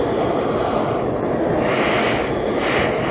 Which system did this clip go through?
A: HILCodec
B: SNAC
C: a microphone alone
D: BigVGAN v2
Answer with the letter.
C